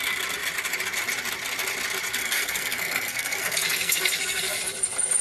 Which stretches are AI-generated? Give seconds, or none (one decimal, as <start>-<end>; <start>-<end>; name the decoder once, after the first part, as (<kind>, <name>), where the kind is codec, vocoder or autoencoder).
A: 2.2-4.6 (codec, SNAC)